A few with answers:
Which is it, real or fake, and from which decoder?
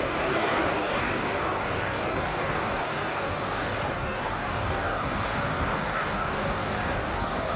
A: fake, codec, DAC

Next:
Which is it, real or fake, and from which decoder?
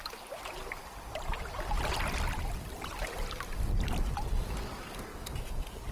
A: real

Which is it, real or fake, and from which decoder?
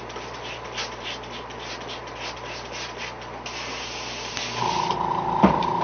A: real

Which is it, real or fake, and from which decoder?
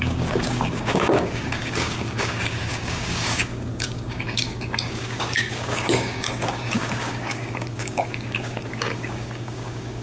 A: fake, codec, DAC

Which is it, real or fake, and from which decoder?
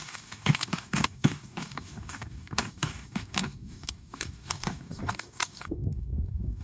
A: fake, codec, DAC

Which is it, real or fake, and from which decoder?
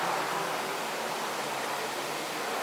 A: real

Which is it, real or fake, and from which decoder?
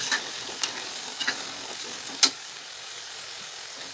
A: fake, codec, DAC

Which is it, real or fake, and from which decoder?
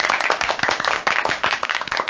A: fake, codec, DAC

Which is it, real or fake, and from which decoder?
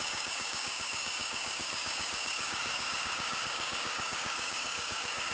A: fake, codec, DAC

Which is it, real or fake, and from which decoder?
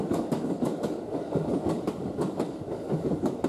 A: fake, codec, DAC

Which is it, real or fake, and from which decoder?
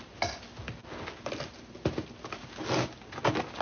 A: real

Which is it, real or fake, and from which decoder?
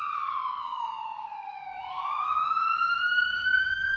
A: fake, codec, DAC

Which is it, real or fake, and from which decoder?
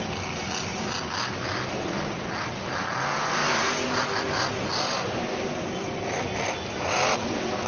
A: real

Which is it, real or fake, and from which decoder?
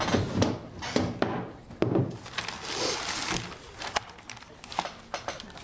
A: real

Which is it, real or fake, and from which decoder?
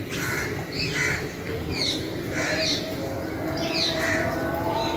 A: real